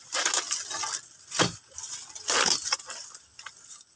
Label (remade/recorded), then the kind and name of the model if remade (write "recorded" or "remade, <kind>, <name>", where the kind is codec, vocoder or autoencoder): recorded